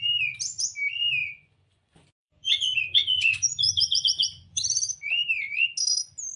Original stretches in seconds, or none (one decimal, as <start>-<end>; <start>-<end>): 0.0-1.2; 5.0-6.4